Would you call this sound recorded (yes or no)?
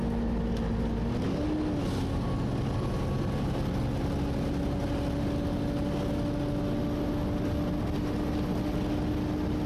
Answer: yes